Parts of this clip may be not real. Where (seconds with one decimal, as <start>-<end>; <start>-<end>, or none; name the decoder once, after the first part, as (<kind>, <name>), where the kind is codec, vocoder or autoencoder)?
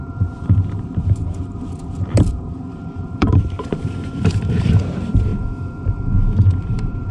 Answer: 0.0-5.3 (vocoder, BigVGAN v2); 6.6-7.1